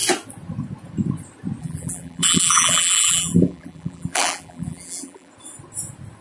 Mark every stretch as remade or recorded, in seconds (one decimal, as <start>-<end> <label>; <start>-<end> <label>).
0.0-1.6 recorded; 1.6-5.3 remade; 5.3-6.2 recorded